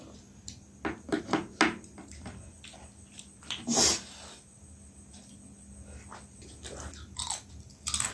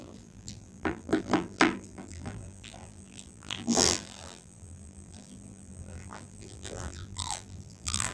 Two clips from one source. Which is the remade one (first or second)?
second